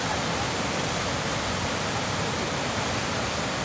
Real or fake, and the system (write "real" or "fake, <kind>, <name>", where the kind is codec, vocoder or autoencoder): fake, vocoder, BigVGAN v2